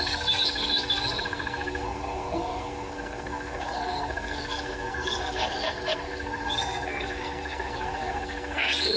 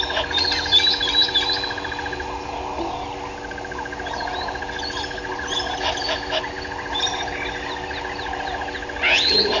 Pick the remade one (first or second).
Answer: first